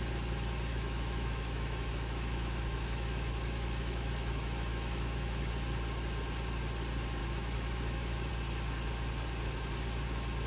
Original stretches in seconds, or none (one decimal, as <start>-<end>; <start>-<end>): 0.0-0.7; 5.5-7.2; 8.3-10.5